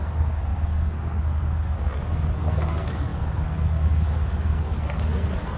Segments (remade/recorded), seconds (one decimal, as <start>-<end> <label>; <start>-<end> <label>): 0.0-5.6 remade